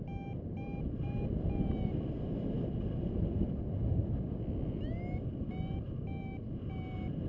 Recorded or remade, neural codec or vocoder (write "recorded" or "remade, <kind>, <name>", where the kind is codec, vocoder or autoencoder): recorded